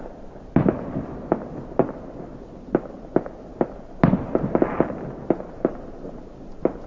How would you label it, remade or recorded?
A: recorded